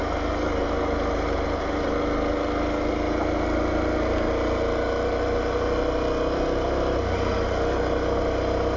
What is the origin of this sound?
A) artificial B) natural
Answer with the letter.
B